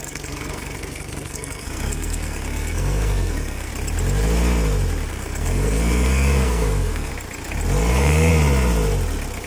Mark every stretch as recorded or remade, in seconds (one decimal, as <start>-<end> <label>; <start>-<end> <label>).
0.0-3.7 remade; 3.7-5.1 recorded; 5.1-7.1 remade; 7.1-7.9 recorded; 7.9-8.3 remade; 8.3-9.5 recorded